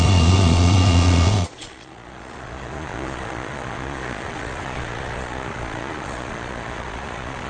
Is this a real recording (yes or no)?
no